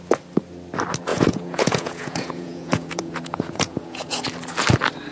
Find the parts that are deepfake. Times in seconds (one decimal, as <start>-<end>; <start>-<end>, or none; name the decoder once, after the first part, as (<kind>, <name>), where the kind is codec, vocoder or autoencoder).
1.1-4.2 (vocoder, Vocos)